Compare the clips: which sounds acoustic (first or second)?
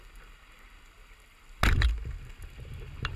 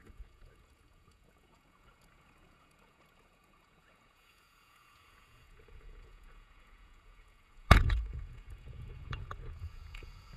first